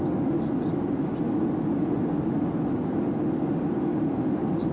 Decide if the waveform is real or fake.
real